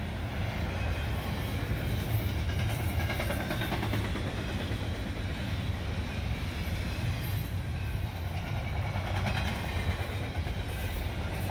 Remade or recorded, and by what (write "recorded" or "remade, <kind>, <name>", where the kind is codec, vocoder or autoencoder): recorded